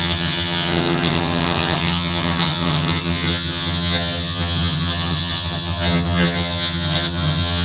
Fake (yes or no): yes